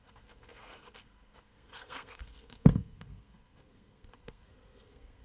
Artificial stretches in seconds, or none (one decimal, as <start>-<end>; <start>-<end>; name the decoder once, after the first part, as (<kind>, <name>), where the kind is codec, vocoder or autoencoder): 0.0-5.2 (codec, SNAC)